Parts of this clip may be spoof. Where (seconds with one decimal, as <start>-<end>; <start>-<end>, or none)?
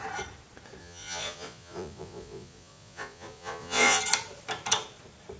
0.8-4.0